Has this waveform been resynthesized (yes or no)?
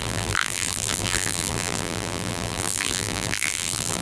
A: yes